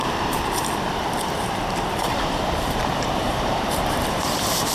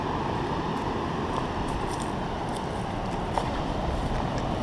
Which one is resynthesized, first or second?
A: first